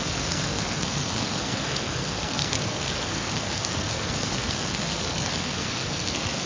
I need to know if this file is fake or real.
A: fake